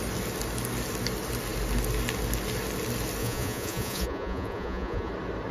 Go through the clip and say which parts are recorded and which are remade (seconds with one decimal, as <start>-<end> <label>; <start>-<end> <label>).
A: 0.0-3.2 recorded; 3.2-5.1 remade; 5.1-5.5 recorded